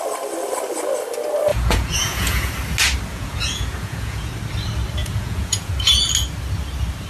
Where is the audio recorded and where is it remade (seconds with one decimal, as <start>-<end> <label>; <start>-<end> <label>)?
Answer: 0.0-1.5 recorded; 1.5-2.5 remade; 2.5-3.1 recorded; 3.1-4.3 remade; 4.3-5.0 recorded; 5.0-5.7 remade; 5.7-7.1 recorded